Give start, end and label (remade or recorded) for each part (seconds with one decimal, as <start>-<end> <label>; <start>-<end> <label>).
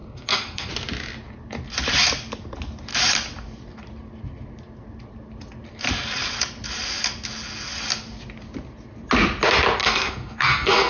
0.0-0.7 remade; 0.7-9.8 recorded; 9.8-10.9 remade